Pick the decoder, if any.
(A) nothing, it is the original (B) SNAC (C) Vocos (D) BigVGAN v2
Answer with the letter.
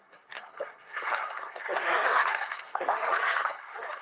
B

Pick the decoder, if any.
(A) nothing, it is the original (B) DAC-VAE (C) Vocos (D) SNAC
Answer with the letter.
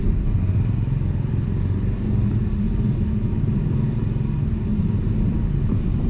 A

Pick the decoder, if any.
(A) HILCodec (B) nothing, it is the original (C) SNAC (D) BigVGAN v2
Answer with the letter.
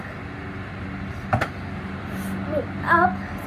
B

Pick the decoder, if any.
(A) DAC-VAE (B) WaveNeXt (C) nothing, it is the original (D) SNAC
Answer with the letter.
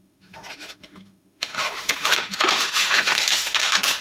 A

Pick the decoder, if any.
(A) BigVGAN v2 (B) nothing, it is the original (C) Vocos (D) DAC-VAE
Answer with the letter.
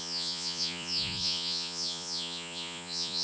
C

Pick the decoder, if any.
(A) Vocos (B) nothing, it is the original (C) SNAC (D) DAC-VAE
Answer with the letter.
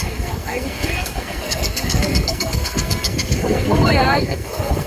C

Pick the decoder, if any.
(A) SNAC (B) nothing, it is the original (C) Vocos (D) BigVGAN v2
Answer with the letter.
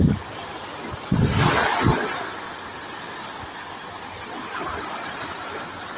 B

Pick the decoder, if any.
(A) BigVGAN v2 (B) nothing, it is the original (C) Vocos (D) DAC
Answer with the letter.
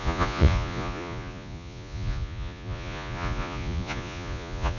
C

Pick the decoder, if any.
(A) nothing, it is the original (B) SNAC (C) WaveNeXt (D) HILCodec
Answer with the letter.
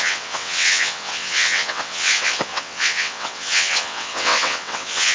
C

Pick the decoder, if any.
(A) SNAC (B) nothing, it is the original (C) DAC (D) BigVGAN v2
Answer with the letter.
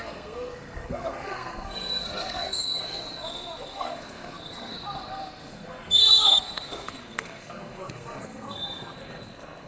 A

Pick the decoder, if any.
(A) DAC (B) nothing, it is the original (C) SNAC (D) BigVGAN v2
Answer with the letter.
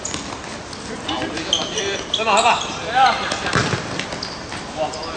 B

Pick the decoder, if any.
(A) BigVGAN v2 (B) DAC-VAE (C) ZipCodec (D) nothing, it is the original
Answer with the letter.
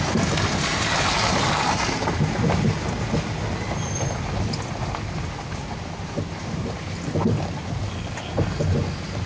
D